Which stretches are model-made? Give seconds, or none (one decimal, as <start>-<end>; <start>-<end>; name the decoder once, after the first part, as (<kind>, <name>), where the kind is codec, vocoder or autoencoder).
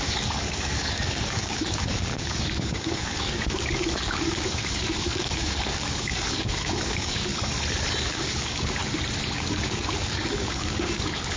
0.0-7.3 (codec, DAC); 8.0-8.8; 9.3-11.4